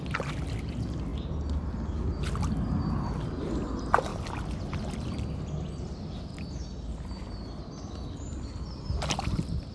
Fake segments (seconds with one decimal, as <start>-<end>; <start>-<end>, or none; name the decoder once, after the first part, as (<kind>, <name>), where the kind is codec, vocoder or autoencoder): none